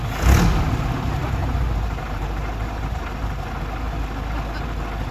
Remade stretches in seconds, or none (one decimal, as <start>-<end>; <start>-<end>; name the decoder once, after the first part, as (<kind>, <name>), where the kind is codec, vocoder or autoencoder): 1.4-3.6 (vocoder, BigVGAN v2)